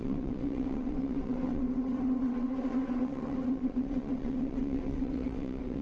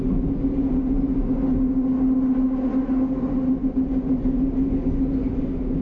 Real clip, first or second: second